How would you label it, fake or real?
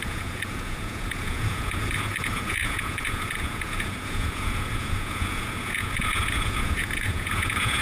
fake